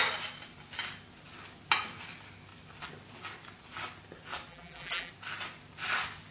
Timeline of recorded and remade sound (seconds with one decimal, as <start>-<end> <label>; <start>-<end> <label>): 0.0-4.5 recorded; 4.5-5.1 remade; 5.1-6.3 recorded